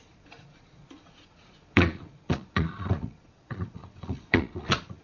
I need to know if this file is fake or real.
fake